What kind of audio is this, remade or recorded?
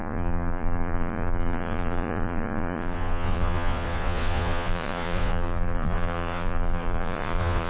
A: remade